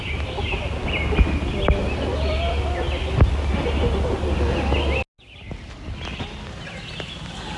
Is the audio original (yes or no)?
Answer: yes